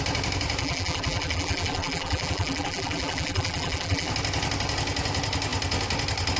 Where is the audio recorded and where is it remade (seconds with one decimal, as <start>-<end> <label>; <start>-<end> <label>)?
0.0-0.6 recorded; 0.6-4.1 remade; 4.1-6.4 recorded